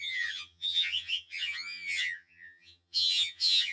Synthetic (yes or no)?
yes